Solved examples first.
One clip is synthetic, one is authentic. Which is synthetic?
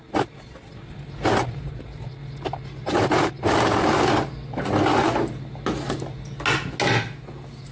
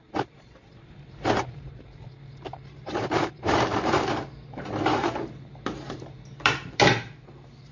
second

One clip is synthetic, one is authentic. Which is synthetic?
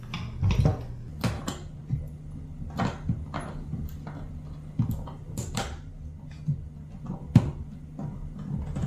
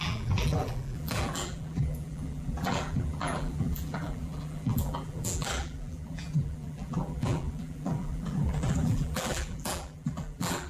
second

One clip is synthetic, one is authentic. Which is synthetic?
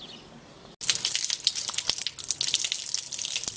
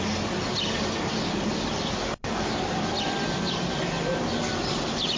second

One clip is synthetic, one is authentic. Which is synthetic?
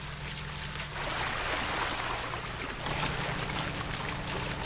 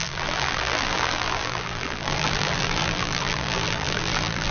second